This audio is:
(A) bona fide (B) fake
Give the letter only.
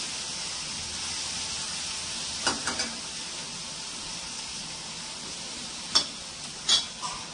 A